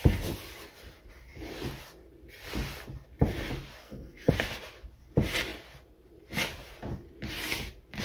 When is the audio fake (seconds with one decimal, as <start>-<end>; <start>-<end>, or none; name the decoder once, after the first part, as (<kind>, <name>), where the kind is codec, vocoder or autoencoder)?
3.8-4.3 (codec, SNAC)